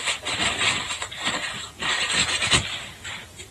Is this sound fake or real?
real